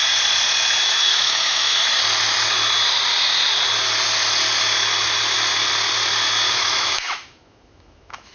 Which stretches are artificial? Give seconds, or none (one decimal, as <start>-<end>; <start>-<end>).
0.8-1.8; 6.5-8.3